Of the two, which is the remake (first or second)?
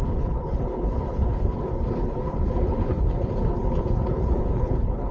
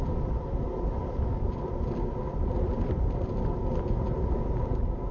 first